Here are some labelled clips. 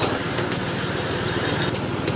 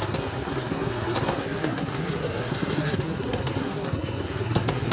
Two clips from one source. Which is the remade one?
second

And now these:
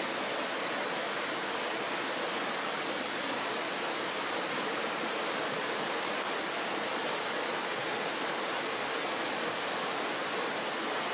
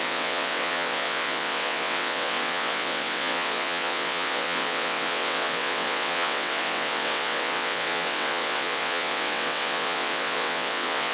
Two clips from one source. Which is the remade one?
second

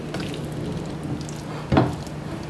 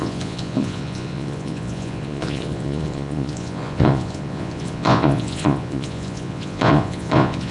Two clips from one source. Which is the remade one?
second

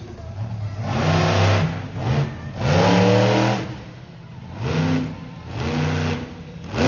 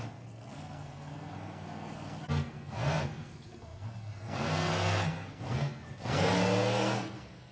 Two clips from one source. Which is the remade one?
second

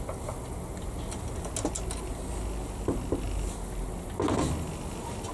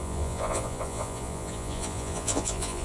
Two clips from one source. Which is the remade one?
second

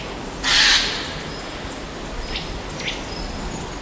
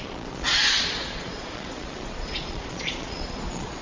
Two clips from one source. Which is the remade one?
second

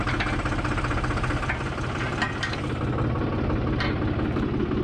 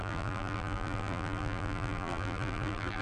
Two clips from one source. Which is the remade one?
second